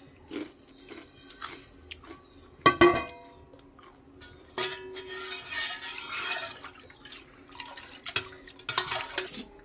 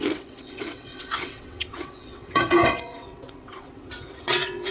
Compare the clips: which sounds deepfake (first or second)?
second